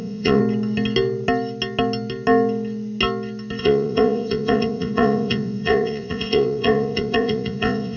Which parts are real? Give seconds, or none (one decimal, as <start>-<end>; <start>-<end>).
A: 0.4-3.6

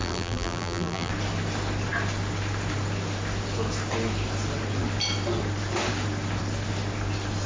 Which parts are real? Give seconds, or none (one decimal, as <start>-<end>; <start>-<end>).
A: 1.1-7.5

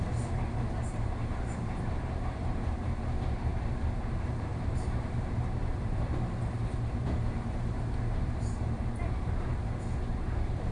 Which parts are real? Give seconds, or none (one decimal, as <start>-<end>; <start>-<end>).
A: 3.5-4.1

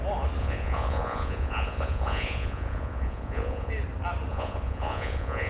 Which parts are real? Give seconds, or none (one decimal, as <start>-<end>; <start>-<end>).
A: 0.0-0.4; 3.7-4.3

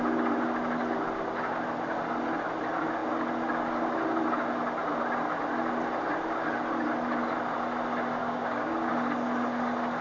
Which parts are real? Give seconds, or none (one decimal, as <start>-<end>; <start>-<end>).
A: 0.0-8.2; 8.9-10.0

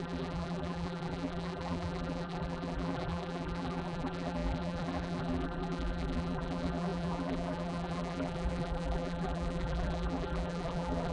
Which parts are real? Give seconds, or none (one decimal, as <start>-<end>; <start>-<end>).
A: none

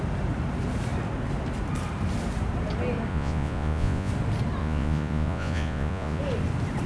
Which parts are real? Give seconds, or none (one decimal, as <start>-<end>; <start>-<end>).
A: 0.0-3.1; 4.1-4.6; 6.2-6.9

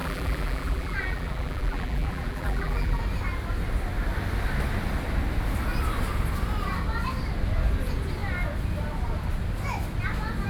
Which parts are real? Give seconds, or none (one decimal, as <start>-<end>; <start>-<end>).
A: 3.0-10.5